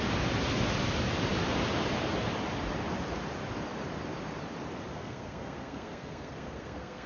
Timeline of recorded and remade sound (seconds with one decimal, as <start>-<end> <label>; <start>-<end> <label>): 0.0-4.9 recorded; 4.9-7.1 remade